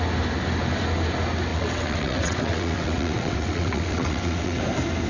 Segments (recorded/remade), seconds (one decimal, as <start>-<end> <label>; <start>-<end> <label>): 0.0-1.5 recorded; 1.5-4.6 remade; 4.6-5.1 recorded